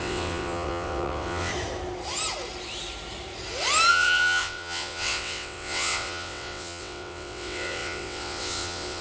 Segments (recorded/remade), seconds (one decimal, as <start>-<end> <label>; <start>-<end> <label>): 0.0-1.5 remade; 1.5-3.9 recorded; 3.9-9.0 remade